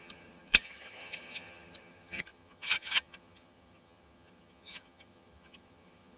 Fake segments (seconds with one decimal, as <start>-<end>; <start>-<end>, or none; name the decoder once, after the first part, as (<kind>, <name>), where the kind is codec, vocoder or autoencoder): 0.0-6.2 (vocoder, HiFi-GAN)